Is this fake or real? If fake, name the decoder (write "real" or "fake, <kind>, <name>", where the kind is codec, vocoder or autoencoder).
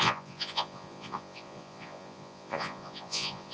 fake, vocoder, Vocos